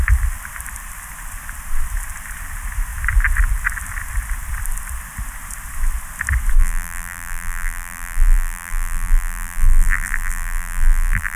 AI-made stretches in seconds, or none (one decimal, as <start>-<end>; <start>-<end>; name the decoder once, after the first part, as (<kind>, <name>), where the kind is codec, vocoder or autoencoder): 6.6-11.4 (vocoder, BigVGAN v2)